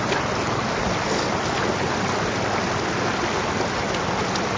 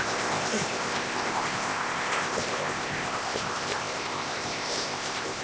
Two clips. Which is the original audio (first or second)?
first